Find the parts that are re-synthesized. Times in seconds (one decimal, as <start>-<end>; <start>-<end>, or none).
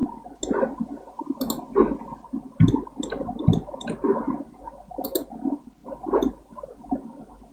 5.8-7.0